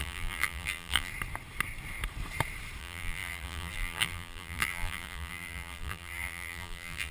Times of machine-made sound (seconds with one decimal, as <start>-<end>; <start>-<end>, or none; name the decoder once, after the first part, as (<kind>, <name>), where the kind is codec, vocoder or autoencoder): 0.0-1.1 (vocoder, BigVGAN v2); 2.8-7.1